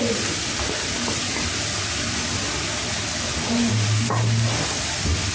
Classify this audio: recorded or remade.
recorded